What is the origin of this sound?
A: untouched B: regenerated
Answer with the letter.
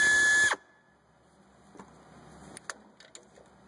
A